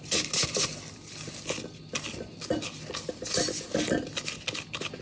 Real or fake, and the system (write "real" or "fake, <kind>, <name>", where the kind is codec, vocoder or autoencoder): real